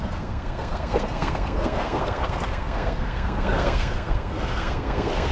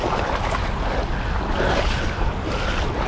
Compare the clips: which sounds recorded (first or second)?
second